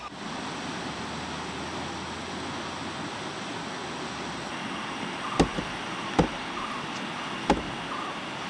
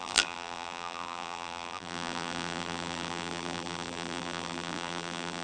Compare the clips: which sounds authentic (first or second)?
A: first